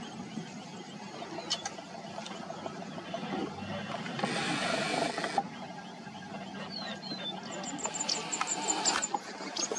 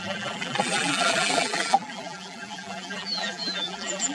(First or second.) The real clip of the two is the first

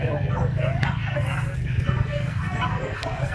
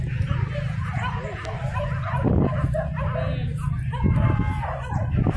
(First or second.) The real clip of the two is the second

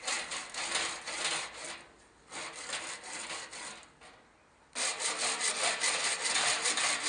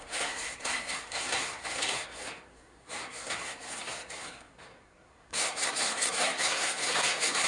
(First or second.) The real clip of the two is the first